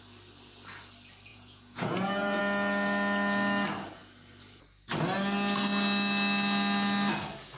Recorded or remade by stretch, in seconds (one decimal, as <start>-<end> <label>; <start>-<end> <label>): 0.0-1.3 recorded; 1.3-2.4 remade; 2.4-7.6 recorded